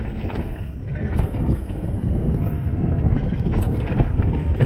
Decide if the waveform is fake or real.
fake